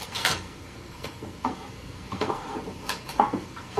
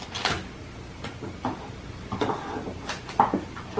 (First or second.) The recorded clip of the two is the second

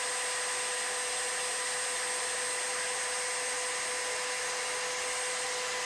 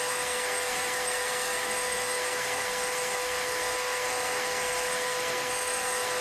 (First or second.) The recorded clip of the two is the first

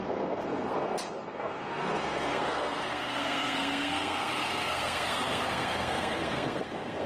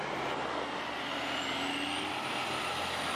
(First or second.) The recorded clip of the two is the second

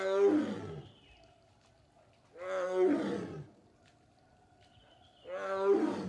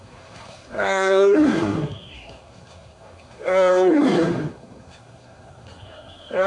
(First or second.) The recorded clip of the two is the first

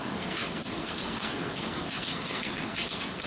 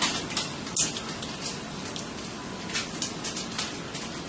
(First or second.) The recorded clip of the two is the second